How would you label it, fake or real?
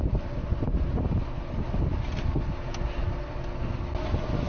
real